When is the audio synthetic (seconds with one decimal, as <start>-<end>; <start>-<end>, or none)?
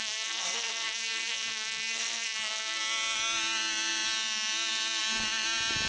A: 0.0-2.8